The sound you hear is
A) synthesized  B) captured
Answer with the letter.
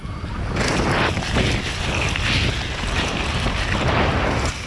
B